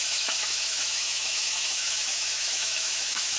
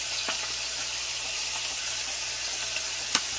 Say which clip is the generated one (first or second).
first